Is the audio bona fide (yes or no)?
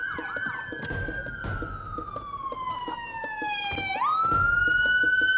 yes